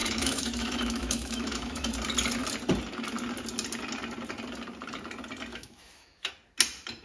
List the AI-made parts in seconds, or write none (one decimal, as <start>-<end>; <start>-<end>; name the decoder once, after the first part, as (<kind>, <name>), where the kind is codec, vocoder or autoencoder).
0.0-1.9 (autoencoder, DAC-VAE); 5.5-6.3